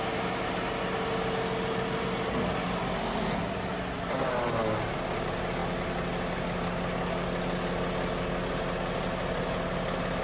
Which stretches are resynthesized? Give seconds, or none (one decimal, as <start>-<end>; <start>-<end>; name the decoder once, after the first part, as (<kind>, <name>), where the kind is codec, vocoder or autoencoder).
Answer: none